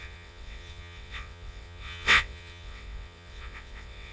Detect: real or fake fake